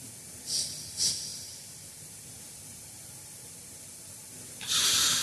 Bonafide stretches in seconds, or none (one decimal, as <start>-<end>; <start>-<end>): 0.0-5.2